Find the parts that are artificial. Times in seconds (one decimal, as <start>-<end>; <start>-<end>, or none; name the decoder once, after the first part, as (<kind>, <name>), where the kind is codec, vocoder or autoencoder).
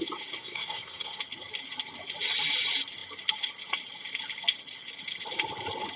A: 0.4-1.2 (codec, SNAC)